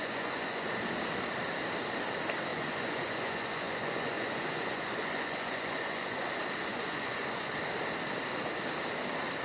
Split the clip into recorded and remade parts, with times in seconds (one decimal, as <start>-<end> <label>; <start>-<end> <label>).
0.0-0.8 remade; 0.8-2.5 recorded; 2.5-6.3 remade; 6.3-6.7 recorded; 6.7-7.5 remade; 7.5-9.4 recorded